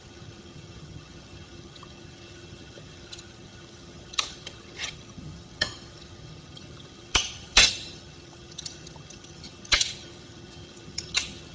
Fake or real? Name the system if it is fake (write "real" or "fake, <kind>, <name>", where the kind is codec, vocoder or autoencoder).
fake, vocoder, HiFi-GAN